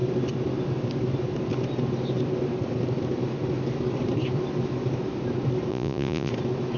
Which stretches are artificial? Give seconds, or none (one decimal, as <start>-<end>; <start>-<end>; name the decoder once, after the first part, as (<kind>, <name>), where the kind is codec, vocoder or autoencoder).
5.7-6.3 (vocoder, Vocos)